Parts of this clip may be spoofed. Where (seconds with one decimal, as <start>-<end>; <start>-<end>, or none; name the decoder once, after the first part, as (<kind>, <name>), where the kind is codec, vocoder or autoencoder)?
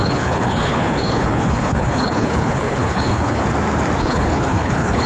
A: 0.0-3.4 (codec, HILCodec); 4.0-5.1